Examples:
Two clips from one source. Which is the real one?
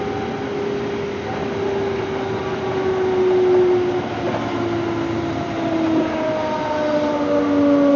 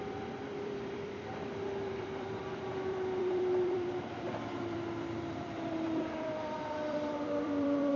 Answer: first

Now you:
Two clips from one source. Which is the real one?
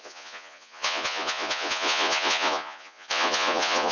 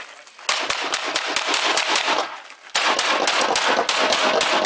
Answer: second